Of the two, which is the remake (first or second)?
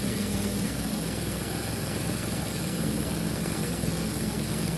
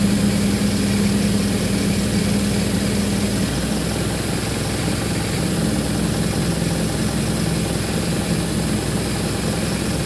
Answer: first